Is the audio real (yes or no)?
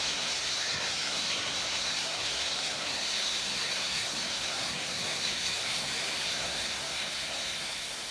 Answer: no